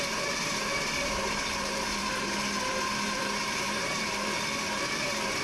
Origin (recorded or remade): remade